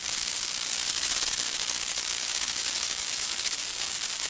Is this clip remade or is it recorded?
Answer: remade